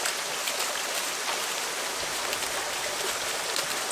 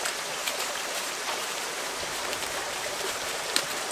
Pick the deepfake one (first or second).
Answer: second